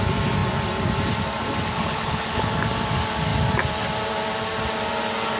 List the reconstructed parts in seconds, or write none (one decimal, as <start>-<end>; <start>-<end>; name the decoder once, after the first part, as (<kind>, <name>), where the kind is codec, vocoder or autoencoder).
1.7-2.5 (codec, HILCodec)